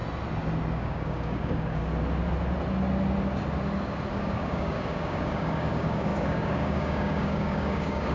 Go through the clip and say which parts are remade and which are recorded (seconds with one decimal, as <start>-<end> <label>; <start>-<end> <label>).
0.0-0.7 recorded; 0.7-1.8 remade; 1.8-4.1 recorded; 4.1-8.1 remade